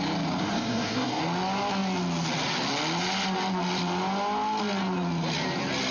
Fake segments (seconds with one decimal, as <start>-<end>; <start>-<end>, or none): 0.4-1.2